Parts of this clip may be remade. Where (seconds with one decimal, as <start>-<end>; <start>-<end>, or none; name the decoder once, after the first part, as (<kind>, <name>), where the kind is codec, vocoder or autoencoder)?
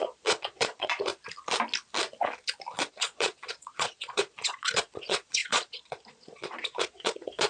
0.0-1.1 (vocoder, Vocos); 2.9-7.5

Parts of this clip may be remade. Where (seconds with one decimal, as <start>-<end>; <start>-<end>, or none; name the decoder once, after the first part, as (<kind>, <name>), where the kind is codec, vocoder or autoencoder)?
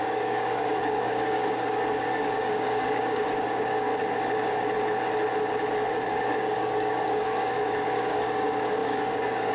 0.0-3.9 (codec, DAC); 5.9-9.5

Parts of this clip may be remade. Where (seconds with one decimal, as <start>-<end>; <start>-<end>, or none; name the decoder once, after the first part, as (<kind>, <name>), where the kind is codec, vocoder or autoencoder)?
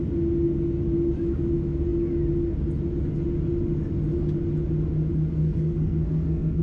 5.4-6.6 (codec, SNAC)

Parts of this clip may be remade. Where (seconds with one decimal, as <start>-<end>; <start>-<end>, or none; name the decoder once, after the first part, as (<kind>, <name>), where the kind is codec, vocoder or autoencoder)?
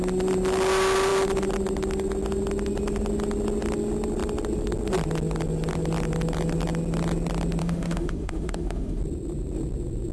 7.6-9.0 (autoencoder, DAC-VAE)